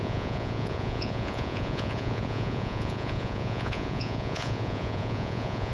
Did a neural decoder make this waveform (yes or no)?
yes